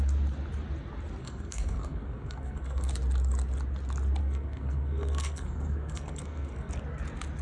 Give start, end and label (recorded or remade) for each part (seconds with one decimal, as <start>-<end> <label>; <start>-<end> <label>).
0.0-1.2 recorded; 1.2-2.9 remade; 2.9-4.2 recorded; 4.2-6.7 remade; 6.7-7.4 recorded